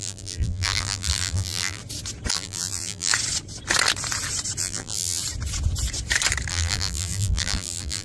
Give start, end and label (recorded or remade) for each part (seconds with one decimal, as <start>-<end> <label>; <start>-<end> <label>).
0.0-1.8 remade; 1.8-2.3 recorded; 2.3-3.1 remade; 3.1-4.6 recorded; 4.6-5.2 remade; 5.2-6.5 recorded; 6.5-8.0 remade